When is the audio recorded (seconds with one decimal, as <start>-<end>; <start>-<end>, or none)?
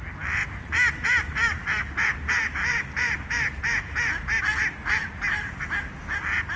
0.0-6.6